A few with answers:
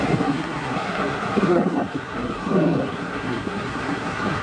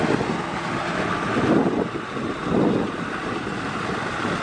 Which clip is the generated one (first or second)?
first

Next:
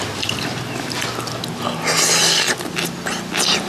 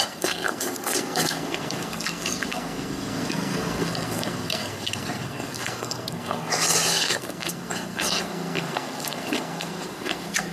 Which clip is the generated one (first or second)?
second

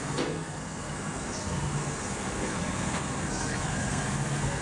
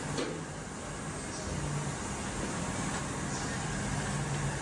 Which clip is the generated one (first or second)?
first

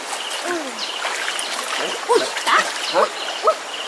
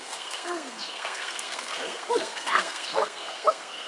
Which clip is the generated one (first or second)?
second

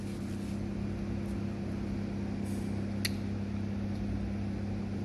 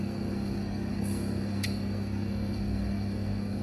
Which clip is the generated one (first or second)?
second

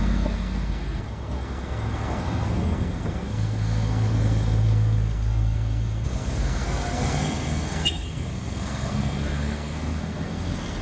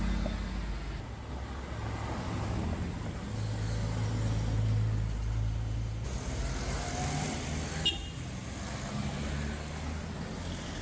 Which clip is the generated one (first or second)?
first